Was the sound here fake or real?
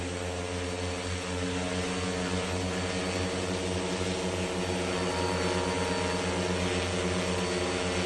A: real